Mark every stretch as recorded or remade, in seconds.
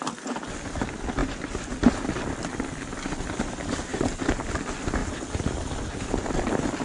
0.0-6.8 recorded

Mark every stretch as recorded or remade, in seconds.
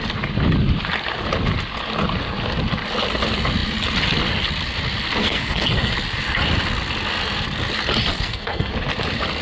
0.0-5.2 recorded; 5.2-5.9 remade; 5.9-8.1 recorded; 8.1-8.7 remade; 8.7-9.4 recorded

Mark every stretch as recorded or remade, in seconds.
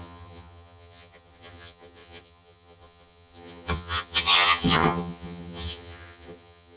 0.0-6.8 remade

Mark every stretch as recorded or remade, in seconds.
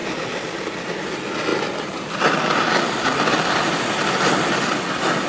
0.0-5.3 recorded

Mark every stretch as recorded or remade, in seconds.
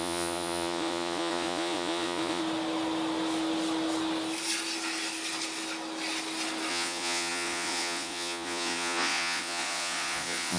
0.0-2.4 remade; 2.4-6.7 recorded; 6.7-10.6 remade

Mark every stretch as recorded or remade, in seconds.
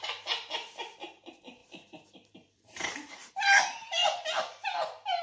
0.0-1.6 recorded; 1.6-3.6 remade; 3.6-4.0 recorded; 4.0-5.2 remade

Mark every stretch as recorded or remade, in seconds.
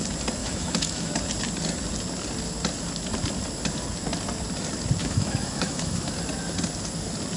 0.0-0.4 recorded; 0.4-1.1 remade; 1.1-5.0 recorded; 5.0-6.1 remade; 6.1-7.4 recorded